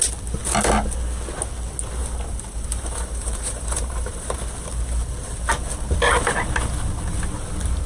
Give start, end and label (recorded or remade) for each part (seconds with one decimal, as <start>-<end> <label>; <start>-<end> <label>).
0.0-2.0 recorded; 2.0-4.4 remade; 4.4-7.9 recorded